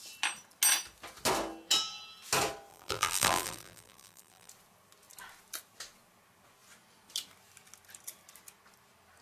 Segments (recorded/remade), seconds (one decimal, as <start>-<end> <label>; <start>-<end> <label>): 0.0-2.7 recorded; 2.7-4.5 remade; 4.5-9.2 recorded